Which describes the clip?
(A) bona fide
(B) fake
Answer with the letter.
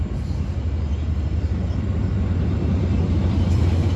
A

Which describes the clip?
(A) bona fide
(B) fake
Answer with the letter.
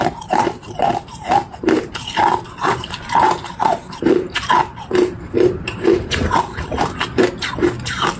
B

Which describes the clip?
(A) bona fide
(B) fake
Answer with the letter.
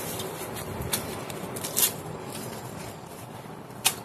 B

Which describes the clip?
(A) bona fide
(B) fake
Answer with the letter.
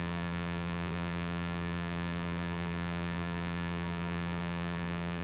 B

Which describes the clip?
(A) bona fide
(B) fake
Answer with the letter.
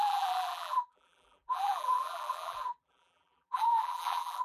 B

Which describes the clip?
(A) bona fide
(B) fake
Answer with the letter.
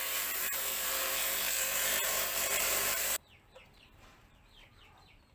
B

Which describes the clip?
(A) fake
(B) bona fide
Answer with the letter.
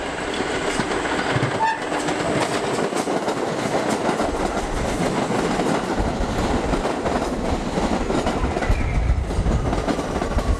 B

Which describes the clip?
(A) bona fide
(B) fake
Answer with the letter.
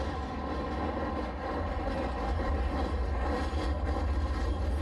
A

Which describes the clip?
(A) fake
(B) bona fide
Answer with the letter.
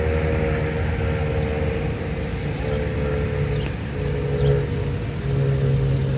B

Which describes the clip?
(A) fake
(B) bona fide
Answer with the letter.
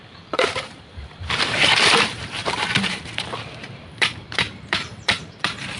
A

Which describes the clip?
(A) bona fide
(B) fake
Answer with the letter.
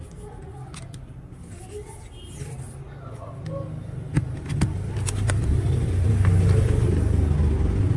A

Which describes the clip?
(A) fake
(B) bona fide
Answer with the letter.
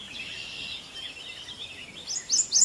B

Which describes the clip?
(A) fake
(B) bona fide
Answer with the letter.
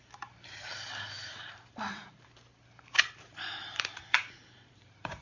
A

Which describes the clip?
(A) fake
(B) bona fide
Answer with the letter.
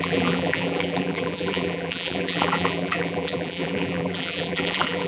A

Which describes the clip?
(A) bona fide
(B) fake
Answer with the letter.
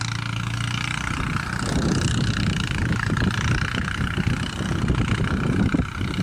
A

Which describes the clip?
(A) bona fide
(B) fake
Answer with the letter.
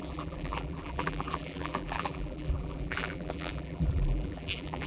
B